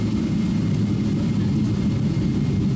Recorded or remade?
recorded